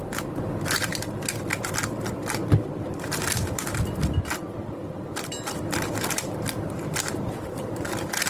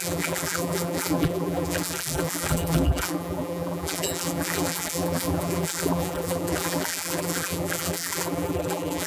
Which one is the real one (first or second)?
first